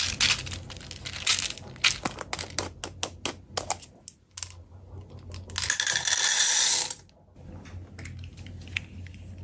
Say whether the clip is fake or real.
real